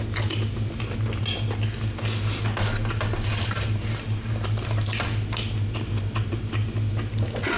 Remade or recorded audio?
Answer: recorded